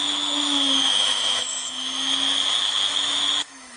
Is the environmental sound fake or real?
fake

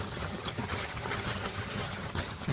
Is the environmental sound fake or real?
fake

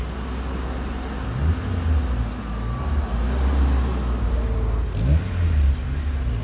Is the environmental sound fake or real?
real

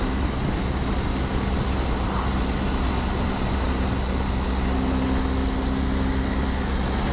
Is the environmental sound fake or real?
real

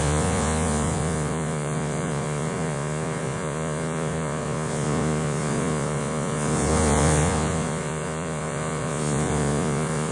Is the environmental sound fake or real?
fake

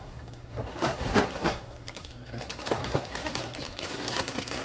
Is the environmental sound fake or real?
fake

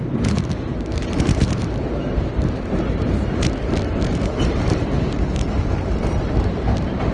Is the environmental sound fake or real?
fake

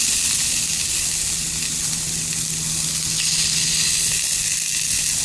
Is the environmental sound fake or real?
real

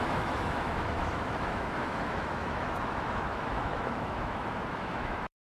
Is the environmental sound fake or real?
fake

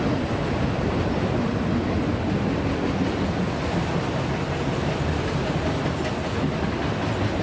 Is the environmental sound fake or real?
real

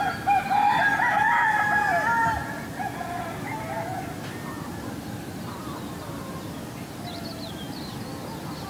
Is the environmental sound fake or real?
real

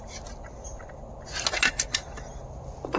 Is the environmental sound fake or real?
real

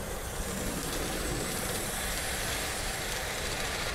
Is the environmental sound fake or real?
fake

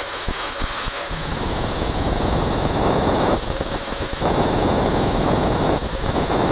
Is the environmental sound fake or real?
fake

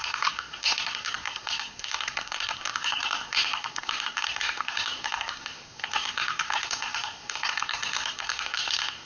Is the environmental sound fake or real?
fake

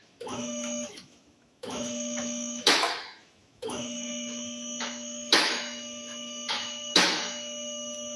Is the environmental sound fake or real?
fake